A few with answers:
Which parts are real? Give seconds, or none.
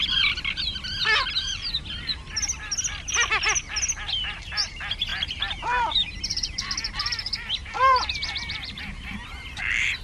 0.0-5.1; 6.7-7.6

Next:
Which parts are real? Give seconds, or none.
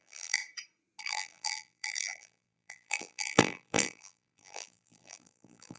0.4-1.0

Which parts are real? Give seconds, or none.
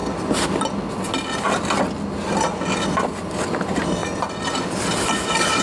0.0-5.6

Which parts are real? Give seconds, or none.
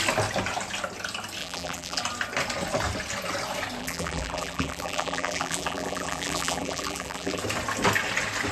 0.0-1.4; 2.0-3.8; 7.4-8.5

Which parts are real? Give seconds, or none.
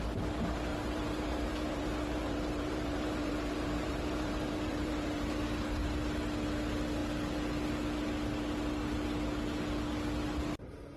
0.0-0.7; 5.3-11.0